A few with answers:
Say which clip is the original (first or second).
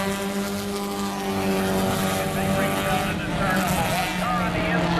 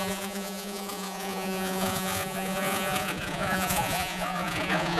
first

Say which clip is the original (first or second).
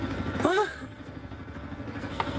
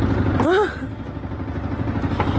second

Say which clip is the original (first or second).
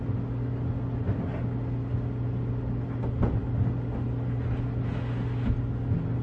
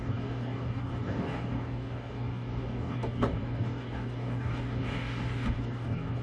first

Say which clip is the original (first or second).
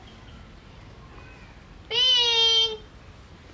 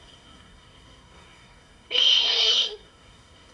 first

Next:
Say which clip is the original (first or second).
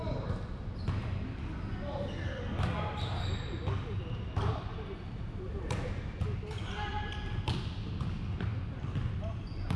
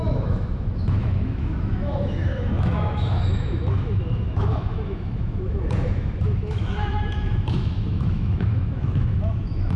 first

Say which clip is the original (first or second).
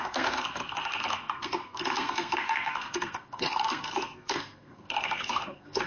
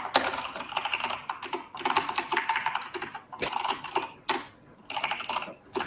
second